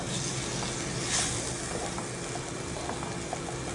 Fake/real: real